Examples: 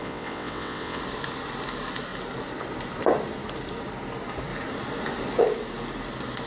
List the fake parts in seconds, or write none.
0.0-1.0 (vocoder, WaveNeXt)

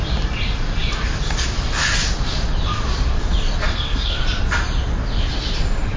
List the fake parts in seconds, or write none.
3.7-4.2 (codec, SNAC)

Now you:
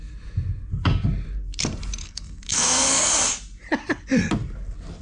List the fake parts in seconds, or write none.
2.0-3.1 (codec, SNAC)

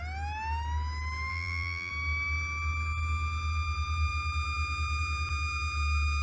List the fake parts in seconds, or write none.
1.3-1.9 (vocoder, BigVGAN v2)

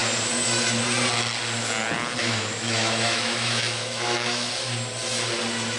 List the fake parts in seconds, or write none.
2.2-4.5 (autoencoder, DAC-VAE)